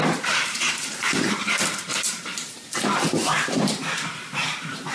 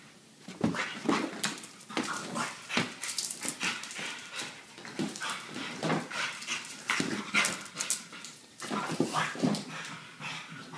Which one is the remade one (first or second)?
first